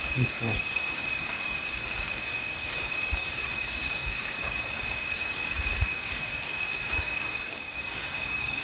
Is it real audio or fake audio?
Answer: fake